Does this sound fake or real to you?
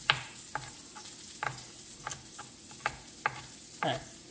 real